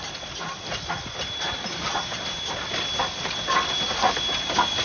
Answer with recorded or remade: recorded